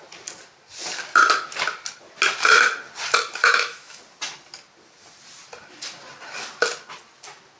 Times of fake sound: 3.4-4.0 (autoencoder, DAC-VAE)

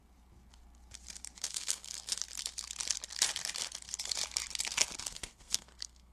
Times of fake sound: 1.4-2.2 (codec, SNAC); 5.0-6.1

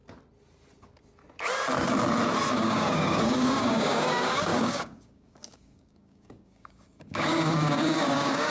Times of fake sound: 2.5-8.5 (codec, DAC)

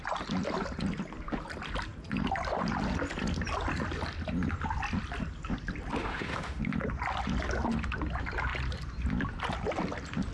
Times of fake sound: 6.0-6.6 (autoencoder, DAC-VAE)

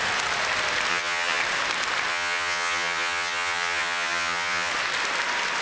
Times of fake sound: 0.9-1.4 (vocoder, HiFi-GAN); 2.1-4.7

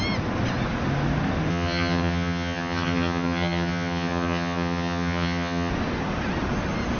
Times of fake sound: 1.5-5.7 (vocoder, HiFi-GAN)